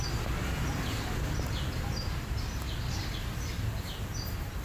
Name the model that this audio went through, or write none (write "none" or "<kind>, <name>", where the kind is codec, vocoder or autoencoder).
none